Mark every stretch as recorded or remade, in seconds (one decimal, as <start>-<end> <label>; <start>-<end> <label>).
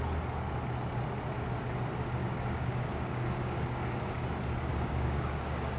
0.0-2.2 recorded; 2.2-4.1 remade; 4.1-4.7 recorded; 4.7-5.8 remade